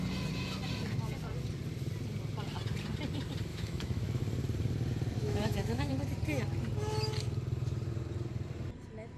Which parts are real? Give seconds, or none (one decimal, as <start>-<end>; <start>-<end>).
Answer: 0.0-3.5; 4.2-5.2; 5.9-9.2